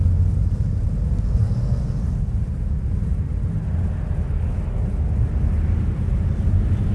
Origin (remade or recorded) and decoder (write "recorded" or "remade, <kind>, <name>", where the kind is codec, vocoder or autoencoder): recorded